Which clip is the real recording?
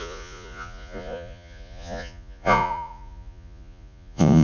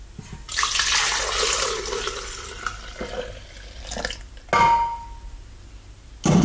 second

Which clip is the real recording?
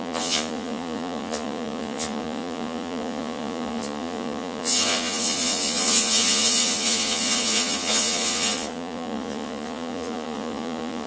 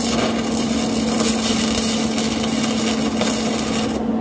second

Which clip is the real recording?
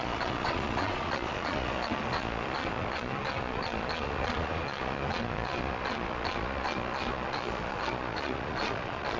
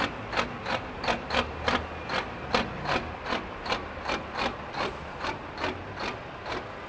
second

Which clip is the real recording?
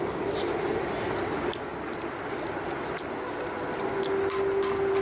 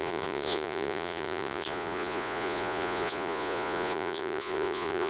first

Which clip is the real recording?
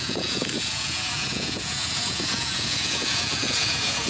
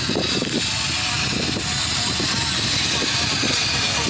second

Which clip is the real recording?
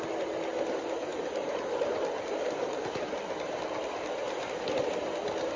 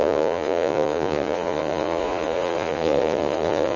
first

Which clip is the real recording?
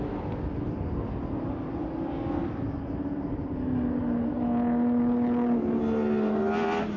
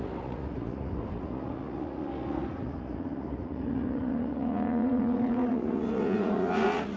first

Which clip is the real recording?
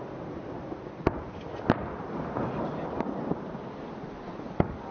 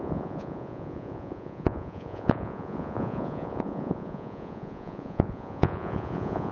first